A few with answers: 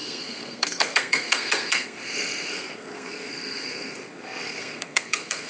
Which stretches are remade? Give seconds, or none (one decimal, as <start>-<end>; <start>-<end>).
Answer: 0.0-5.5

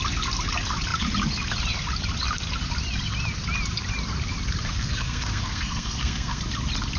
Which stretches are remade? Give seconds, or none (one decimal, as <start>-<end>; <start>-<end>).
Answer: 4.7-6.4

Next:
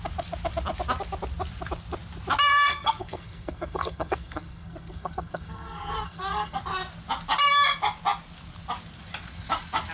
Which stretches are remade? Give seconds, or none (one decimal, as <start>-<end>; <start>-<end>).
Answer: 2.5-6.6

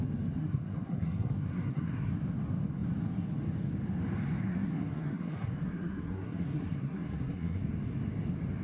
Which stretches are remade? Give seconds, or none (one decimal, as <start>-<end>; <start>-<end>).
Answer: 0.4-2.1; 4.5-7.6

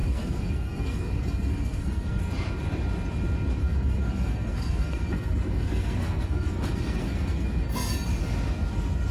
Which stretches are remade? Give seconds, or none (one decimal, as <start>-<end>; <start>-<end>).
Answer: 0.0-2.2; 3.6-7.9